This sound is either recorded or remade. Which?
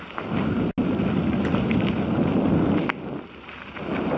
recorded